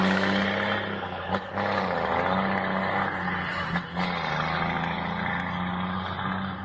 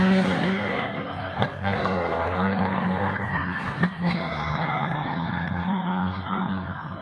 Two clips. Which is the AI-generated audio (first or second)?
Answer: second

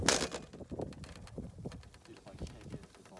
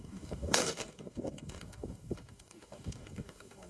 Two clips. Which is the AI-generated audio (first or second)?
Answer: second